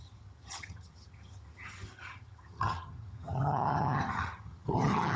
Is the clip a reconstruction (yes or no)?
yes